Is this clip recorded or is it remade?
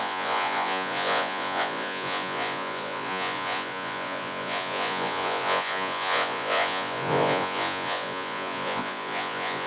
remade